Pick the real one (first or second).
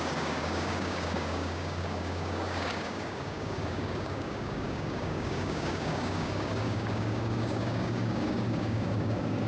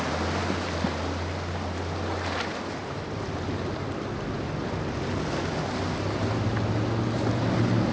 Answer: second